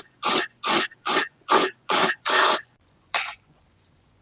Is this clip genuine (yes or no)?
no